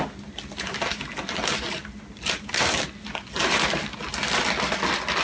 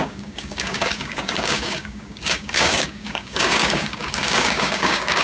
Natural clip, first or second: first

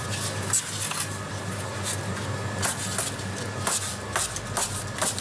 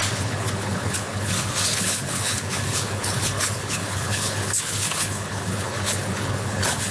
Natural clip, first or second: first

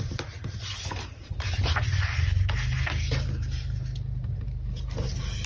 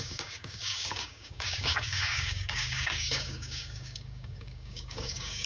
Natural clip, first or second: first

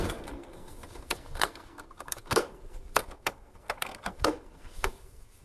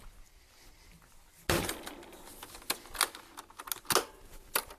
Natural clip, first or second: second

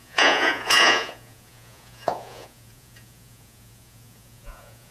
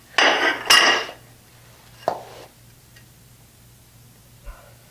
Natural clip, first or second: second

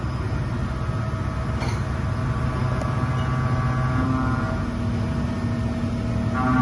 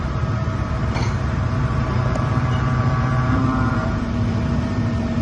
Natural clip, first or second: first